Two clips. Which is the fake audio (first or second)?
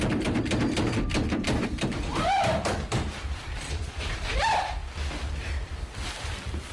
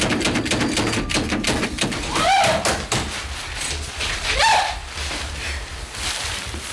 first